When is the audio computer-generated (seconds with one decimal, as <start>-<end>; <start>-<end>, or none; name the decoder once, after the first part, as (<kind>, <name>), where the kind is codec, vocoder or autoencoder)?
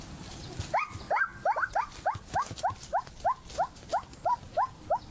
1.3-2.2 (vocoder, BigVGAN v2)